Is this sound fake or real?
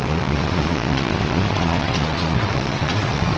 fake